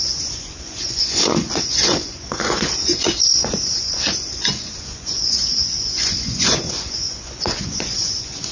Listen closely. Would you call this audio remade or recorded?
remade